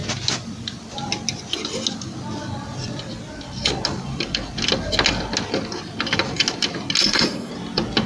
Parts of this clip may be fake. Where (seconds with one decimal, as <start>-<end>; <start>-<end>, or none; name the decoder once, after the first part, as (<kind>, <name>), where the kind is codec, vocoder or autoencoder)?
7.0-7.5 (codec, SNAC)